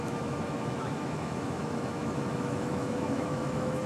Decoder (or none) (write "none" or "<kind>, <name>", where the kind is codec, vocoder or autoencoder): autoencoder, DAC-VAE